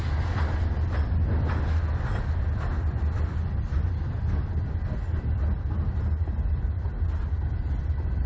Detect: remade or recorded recorded